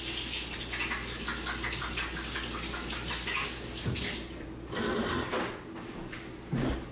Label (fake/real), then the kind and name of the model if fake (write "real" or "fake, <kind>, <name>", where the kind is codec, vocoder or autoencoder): real